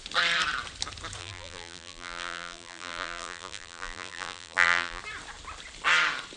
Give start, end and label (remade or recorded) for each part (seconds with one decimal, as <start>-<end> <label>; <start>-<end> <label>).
0.0-1.2 recorded; 1.2-5.0 remade; 5.0-6.4 recorded